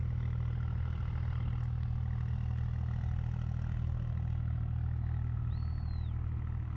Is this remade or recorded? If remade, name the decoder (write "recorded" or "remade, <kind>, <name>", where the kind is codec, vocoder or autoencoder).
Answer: recorded